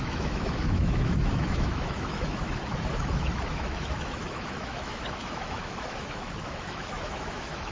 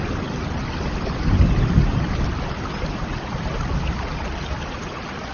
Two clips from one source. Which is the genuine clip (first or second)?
second